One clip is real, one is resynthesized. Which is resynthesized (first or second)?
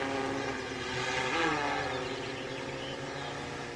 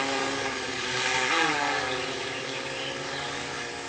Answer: second